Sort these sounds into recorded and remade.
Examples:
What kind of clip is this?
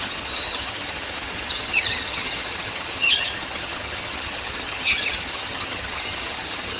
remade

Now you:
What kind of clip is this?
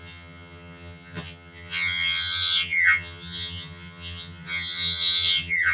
remade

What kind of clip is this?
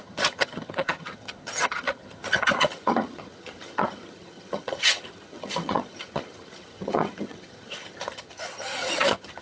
remade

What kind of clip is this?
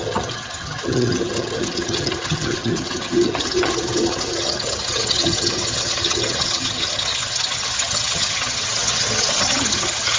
remade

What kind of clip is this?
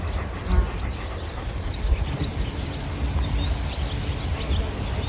recorded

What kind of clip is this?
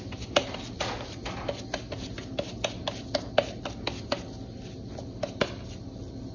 recorded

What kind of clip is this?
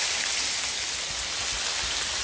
recorded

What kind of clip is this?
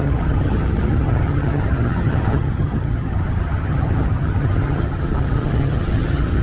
remade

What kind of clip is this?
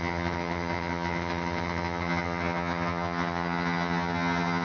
remade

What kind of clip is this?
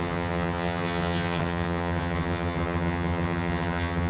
remade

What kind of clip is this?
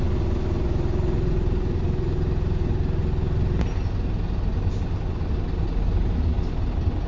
recorded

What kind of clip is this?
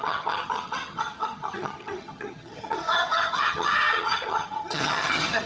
remade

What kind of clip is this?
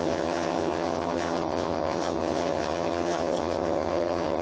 remade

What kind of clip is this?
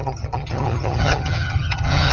remade